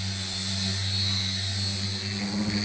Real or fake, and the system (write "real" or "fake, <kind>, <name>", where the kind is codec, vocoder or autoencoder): real